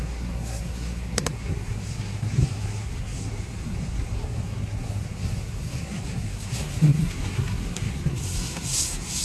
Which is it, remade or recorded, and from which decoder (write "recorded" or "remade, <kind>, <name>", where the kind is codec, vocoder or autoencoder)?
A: remade, codec, SNAC